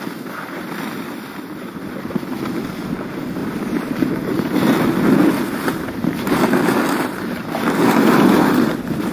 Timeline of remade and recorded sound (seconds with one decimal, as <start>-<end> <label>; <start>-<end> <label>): 0.0-9.1 recorded